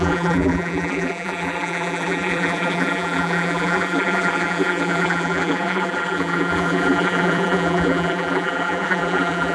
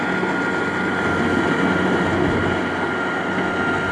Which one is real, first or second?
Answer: second